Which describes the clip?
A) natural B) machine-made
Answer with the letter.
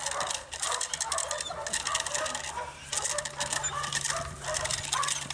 A